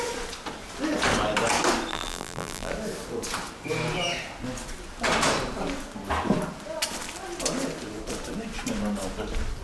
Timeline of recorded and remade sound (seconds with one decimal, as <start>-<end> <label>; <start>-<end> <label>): 0.0-1.9 recorded; 1.9-2.7 remade; 2.7-9.6 recorded